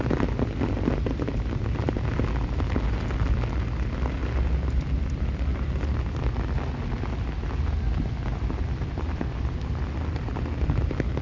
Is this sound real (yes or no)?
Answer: yes